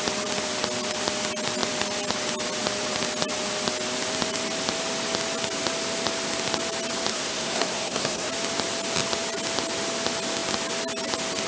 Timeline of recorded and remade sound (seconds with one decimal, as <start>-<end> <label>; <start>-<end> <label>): 0.0-7.1 recorded; 7.1-8.3 remade; 8.3-11.5 recorded